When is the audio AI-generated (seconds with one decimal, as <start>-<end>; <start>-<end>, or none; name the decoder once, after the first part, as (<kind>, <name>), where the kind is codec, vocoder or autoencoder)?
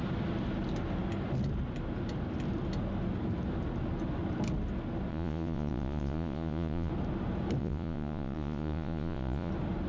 5.1-6.9 (vocoder, Vocos); 7.6-9.5